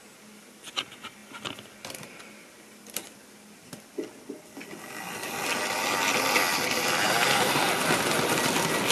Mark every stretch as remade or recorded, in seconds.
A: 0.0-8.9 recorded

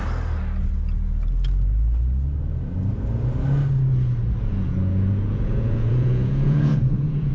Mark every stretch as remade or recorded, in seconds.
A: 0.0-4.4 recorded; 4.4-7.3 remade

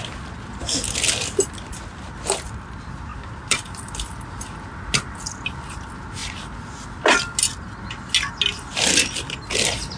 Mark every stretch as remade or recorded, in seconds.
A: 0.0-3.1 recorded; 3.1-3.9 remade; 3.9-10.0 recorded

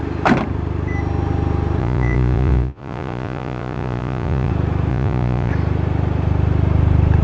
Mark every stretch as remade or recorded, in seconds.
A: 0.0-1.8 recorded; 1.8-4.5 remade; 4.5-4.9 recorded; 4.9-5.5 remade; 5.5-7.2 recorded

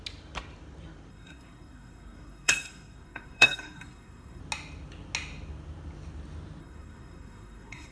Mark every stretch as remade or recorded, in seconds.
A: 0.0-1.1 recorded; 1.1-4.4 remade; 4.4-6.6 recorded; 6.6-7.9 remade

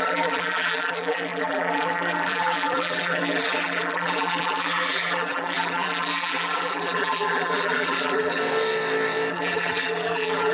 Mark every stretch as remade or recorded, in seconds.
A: 0.0-8.4 remade; 8.4-9.3 recorded; 9.3-10.5 remade

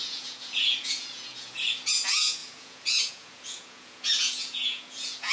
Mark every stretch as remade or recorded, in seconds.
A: 0.0-5.3 remade

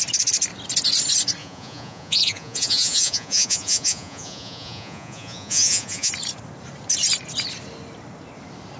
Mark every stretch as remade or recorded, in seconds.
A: 0.0-1.4 recorded; 1.4-6.1 remade; 6.1-8.8 recorded